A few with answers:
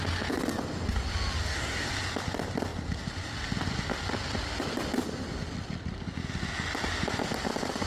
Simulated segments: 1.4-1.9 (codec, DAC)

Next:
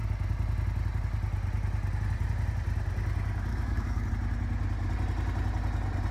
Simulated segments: 3.5-4.1 (codec, DAC)